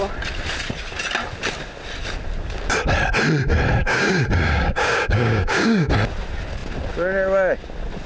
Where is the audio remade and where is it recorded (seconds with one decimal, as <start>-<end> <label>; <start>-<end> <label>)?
0.0-3.8 recorded; 3.8-5.9 remade; 5.9-8.1 recorded